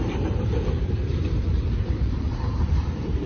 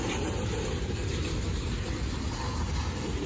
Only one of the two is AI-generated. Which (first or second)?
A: first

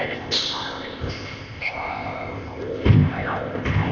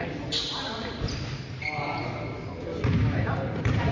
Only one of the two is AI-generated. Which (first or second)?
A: first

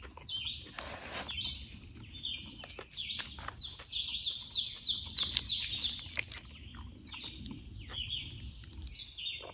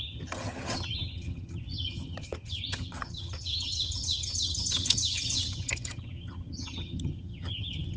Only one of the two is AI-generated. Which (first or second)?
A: second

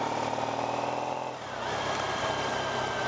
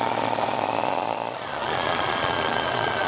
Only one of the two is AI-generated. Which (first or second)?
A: second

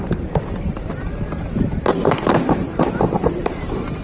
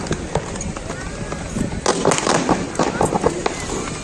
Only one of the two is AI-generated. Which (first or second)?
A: first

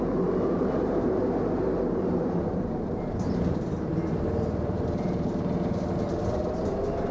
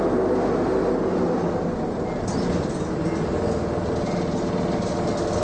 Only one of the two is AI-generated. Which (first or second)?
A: first